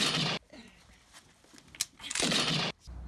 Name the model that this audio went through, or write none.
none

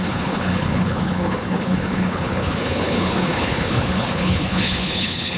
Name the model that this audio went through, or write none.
codec, HILCodec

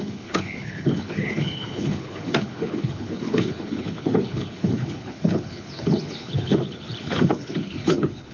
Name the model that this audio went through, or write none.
codec, HILCodec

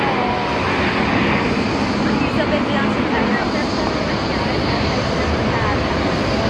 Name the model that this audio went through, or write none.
none